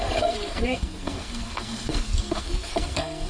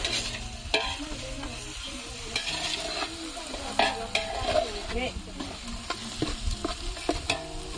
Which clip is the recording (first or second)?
second